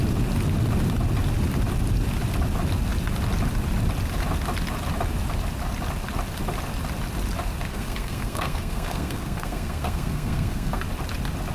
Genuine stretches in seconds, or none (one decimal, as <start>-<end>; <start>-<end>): 0.0-7.7; 10.8-11.5